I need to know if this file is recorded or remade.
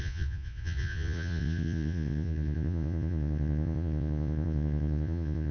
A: remade